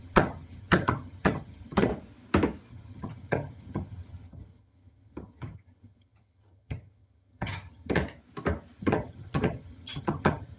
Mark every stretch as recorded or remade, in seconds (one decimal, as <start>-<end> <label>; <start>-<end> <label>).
0.0-1.9 remade; 1.9-2.7 recorded; 2.7-8.0 remade; 8.0-8.8 recorded; 8.8-10.6 remade